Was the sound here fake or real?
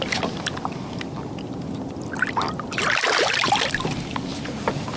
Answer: fake